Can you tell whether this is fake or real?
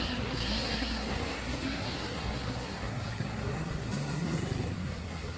fake